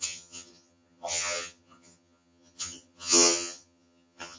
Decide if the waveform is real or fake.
fake